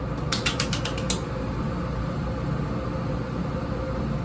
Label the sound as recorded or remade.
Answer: recorded